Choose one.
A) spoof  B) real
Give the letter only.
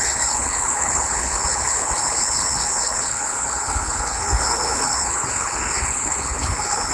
A